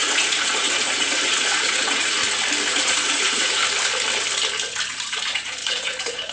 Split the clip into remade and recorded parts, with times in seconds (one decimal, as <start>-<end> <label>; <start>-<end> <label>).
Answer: 0.0-2.2 remade; 2.2-2.7 recorded; 2.7-3.6 remade; 3.6-4.9 recorded; 4.9-6.3 remade